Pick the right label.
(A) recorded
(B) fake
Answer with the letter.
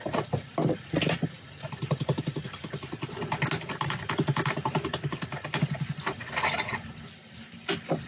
A